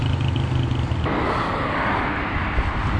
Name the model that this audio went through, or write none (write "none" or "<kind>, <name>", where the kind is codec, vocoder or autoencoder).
none